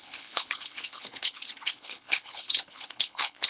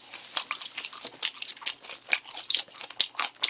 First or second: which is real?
second